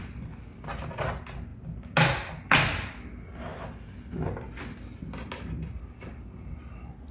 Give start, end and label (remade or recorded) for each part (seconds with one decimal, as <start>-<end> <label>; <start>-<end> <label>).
0.0-7.1 recorded